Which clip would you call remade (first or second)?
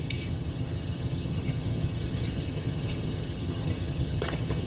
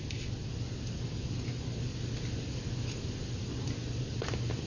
first